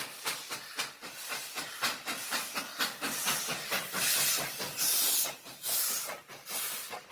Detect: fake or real real